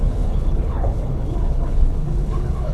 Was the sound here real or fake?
fake